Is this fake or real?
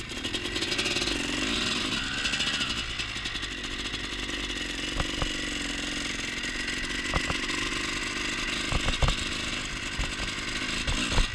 real